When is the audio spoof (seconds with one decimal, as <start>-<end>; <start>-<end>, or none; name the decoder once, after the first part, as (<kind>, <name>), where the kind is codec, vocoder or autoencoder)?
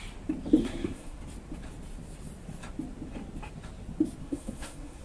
0.6-1.2 (codec, SNAC); 4.2-5.0